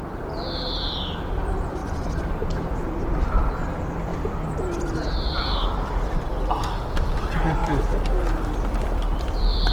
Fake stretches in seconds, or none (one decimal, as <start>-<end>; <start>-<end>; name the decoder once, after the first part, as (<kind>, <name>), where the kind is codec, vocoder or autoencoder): 4.1-4.8 (vocoder, BigVGAN v2); 7.6-9.7